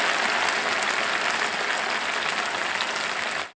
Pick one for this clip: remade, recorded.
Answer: recorded